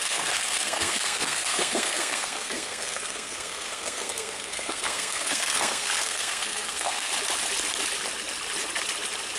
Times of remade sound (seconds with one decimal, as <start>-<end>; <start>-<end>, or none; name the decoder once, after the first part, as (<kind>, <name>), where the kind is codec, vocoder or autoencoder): 0.0-7.1 (codec, SNAC)